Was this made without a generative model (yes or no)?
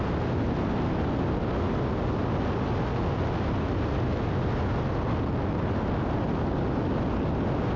yes